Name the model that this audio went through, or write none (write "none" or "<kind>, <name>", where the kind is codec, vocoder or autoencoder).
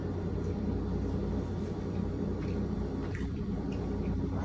vocoder, BigVGAN v2